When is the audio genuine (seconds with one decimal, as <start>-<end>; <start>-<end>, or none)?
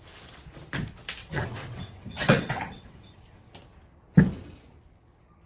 0.0-1.2; 3.5-5.5